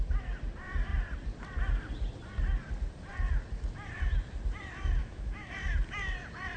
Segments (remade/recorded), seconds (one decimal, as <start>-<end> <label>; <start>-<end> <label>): 0.0-5.0 recorded; 5.0-5.5 remade; 5.5-6.6 recorded